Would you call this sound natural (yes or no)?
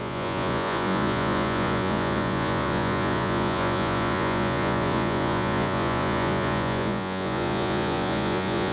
no